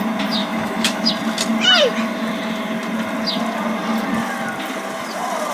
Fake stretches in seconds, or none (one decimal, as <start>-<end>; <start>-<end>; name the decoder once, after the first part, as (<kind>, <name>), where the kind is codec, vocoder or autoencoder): 0.4-1.1 (autoencoder, DAC-VAE)